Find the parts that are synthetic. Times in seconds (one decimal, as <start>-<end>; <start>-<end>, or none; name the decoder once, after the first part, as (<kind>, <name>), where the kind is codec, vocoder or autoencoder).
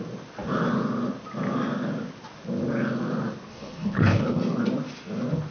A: 3.5-4.4 (codec, HILCodec)